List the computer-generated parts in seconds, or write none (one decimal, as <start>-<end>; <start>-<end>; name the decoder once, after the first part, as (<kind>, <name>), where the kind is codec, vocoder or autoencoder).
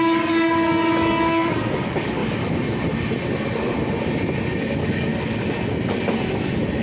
0.0-2.2 (codec, DAC); 4.6-5.1